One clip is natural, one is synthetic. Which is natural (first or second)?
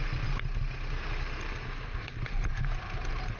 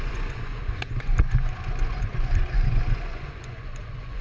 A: first